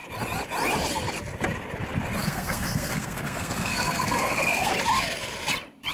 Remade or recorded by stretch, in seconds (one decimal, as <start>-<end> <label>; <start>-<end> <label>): 0.0-2.2 recorded; 2.2-4.7 remade; 4.7-5.9 recorded